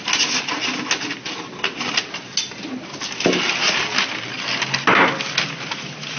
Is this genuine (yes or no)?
yes